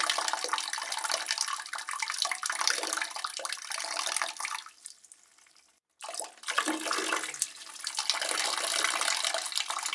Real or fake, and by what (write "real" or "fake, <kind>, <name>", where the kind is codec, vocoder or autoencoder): real